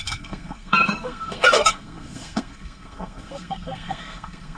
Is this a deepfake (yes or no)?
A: yes